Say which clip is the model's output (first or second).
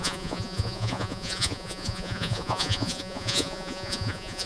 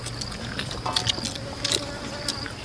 first